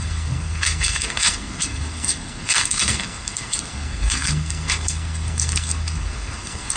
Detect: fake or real fake